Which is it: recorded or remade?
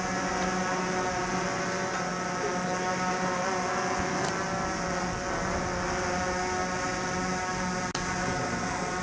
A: recorded